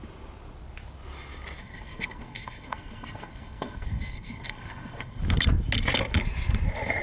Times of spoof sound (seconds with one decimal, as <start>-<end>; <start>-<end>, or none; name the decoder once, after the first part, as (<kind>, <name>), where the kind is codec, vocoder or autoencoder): 1.6-5.2 (codec, SNAC)